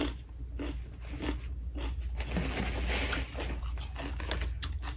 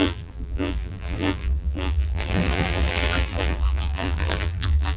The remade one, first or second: second